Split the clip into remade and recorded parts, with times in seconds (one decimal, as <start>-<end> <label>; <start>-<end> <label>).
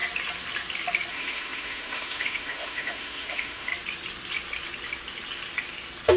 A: 0.0-1.1 recorded; 1.1-3.7 remade; 3.7-6.2 recorded